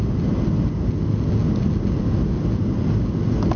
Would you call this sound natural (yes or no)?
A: yes